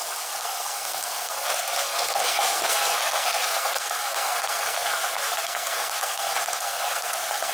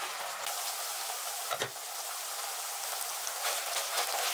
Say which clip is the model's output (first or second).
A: first